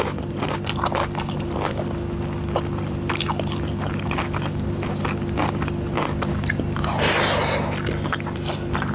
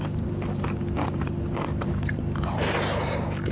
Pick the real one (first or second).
first